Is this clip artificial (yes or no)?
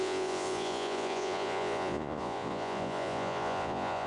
yes